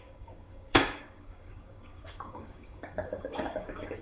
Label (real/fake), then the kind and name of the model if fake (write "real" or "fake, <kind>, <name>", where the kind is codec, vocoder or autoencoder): fake, codec, DAC